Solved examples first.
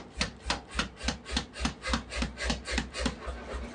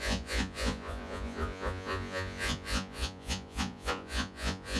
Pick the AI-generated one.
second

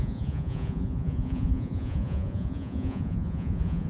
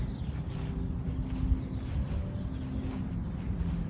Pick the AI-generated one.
first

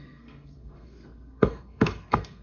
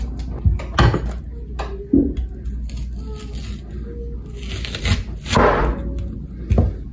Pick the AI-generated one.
first